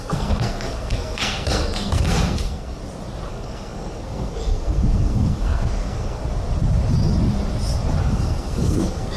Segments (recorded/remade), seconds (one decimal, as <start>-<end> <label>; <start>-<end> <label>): 0.0-2.8 remade; 2.8-3.3 recorded; 3.3-6.2 remade; 6.2-8.0 recorded; 8.0-9.2 remade